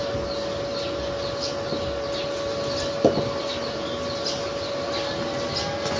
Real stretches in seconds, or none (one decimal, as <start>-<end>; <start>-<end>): 0.0-6.0